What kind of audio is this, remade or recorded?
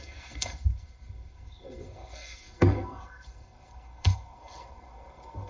remade